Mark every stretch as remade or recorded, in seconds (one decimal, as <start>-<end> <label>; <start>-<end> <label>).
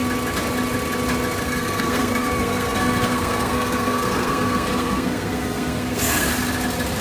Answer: 0.0-1.4 recorded; 1.4-6.3 remade; 6.3-7.0 recorded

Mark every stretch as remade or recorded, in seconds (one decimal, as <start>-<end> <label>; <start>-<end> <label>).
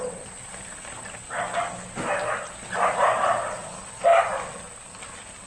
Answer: 0.0-5.5 recorded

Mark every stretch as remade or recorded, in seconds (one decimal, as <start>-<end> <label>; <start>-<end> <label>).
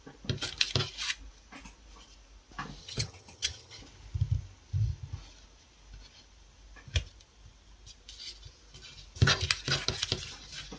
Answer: 0.0-2.8 recorded; 2.8-3.8 remade; 3.8-10.8 recorded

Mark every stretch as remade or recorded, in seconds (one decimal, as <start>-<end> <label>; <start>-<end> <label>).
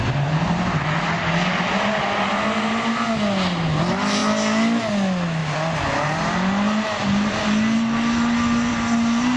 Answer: 0.0-9.4 recorded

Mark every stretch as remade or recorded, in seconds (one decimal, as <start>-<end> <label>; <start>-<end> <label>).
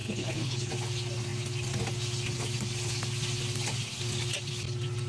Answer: 0.0-0.7 remade; 0.7-5.1 recorded